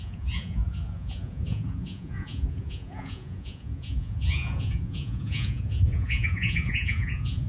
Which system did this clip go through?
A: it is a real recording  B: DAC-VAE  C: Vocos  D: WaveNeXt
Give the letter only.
C